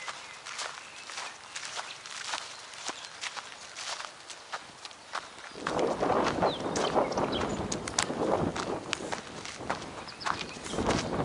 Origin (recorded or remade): recorded